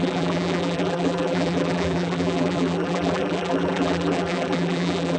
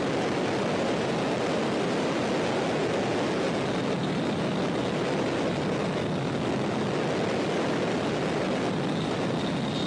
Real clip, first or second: second